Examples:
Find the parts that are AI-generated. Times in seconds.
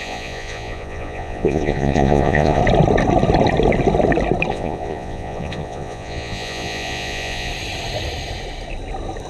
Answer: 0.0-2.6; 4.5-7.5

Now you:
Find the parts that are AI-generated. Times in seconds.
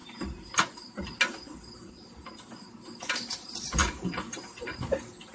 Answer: 3.8-4.8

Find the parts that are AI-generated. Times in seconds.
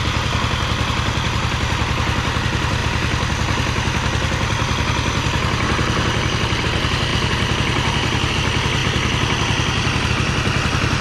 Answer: none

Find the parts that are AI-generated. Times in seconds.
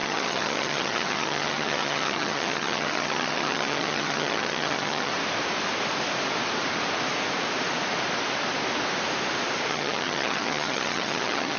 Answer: 0.0-5.1; 9.7-11.6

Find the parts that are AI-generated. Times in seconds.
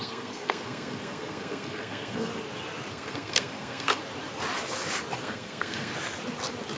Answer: 0.0-2.3; 2.9-4.0; 5.2-5.9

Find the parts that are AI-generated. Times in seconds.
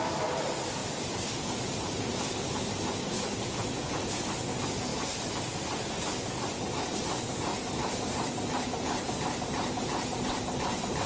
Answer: 0.8-2.6; 7.5-9.4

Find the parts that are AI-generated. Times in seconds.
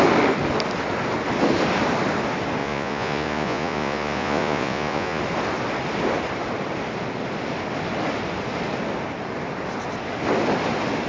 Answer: 2.6-5.2